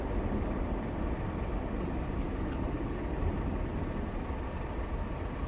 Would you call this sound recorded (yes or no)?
yes